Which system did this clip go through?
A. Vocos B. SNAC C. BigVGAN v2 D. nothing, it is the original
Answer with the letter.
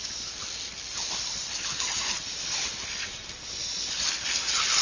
D